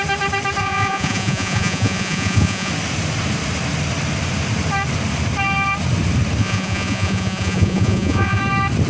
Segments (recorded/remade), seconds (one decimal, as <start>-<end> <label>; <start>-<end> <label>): 0.0-0.6 recorded; 0.6-2.7 remade; 2.7-6.4 recorded; 6.4-8.4 remade; 8.4-8.9 recorded